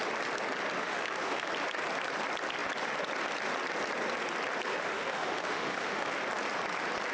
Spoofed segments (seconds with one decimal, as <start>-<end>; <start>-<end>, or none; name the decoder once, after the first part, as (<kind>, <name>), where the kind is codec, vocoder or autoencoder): 0.8-1.5 (autoencoder, DAC-VAE); 4.7-6.1